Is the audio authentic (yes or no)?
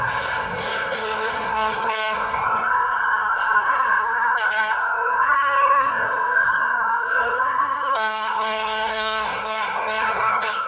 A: no